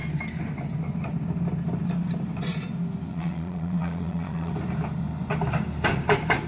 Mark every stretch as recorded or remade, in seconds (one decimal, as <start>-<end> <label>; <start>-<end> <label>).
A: 0.0-3.1 recorded; 3.1-4.5 remade; 4.5-6.5 recorded